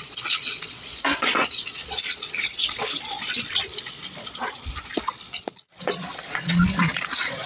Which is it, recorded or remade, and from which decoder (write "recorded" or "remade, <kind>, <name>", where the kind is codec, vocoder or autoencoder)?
remade, vocoder, Vocos